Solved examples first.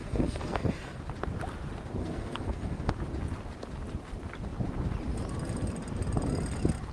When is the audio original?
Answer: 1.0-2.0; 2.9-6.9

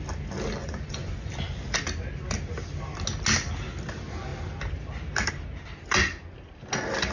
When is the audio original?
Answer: 0.0-0.6; 1.3-7.1

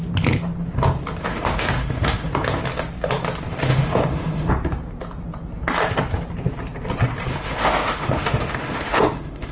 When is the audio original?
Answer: 0.0-1.2; 2.3-3.7; 4.5-7.3